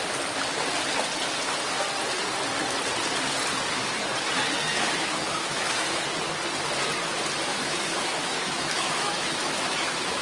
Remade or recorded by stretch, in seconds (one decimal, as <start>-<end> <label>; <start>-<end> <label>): 0.0-4.7 recorded; 4.7-6.0 remade; 6.0-7.5 recorded; 7.5-10.2 remade